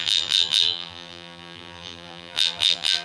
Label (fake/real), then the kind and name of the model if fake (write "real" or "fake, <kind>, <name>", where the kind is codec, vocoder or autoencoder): fake, vocoder, BigVGAN v2